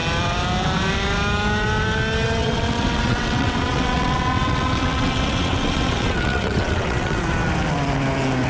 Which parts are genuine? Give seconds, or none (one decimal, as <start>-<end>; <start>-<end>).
0.0-2.4; 7.2-8.5